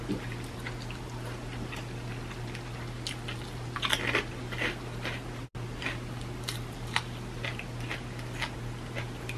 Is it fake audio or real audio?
real